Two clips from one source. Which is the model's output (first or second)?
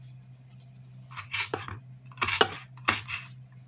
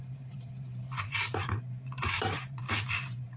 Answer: second